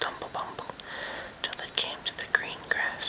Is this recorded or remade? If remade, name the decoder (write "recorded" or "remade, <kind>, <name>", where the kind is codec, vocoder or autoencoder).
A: recorded